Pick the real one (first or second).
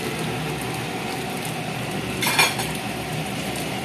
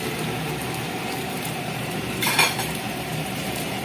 first